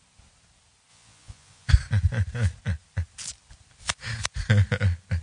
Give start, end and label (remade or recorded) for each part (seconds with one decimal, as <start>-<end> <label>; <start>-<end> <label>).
0.0-0.9 recorded; 0.9-1.7 remade; 1.7-5.2 recorded